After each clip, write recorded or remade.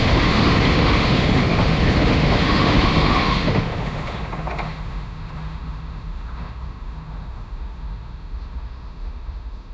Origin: remade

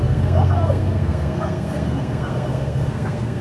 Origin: remade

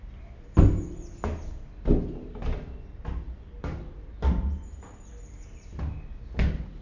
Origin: recorded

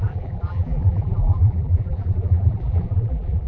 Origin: remade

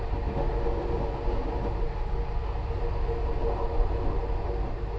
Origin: recorded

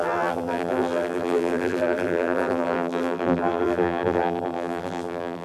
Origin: remade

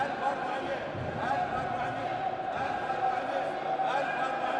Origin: recorded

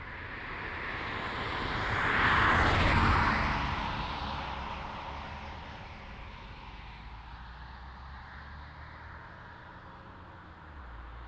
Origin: recorded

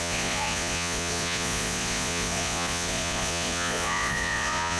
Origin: remade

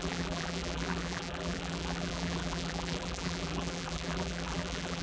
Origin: remade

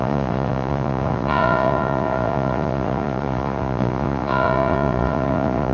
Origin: remade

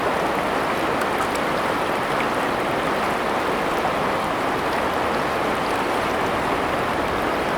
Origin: recorded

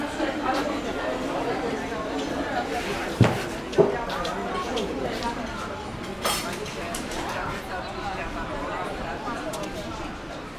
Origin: recorded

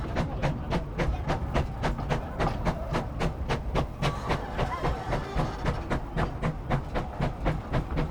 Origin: recorded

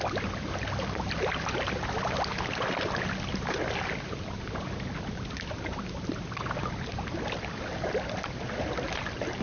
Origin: recorded